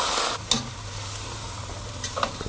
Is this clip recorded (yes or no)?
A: yes